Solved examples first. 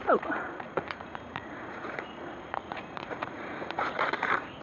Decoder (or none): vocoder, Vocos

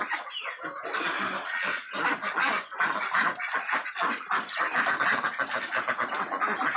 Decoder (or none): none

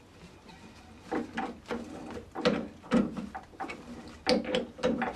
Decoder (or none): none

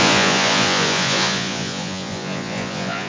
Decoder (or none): vocoder, Vocos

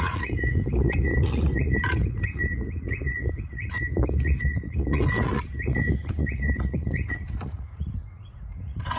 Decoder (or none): vocoder, Vocos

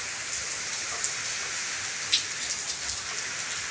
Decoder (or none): none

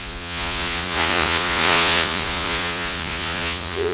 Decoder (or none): vocoder, Vocos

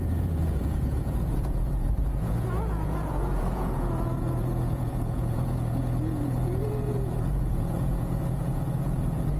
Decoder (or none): vocoder, Vocos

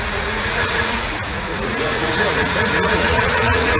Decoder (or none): vocoder, Vocos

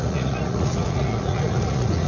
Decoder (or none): vocoder, Vocos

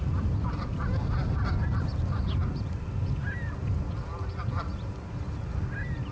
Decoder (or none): none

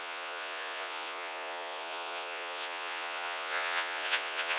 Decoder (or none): vocoder, Vocos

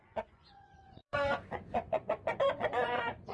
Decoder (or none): vocoder, Vocos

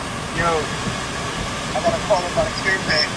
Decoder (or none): none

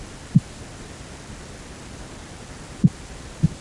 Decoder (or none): none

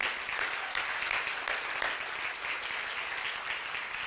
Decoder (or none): none